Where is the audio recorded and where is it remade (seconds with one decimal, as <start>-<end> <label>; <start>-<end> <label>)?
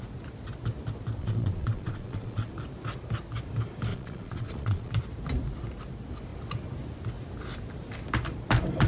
0.0-1.2 recorded; 1.2-2.5 remade; 2.5-3.9 recorded; 3.9-4.9 remade; 4.9-8.9 recorded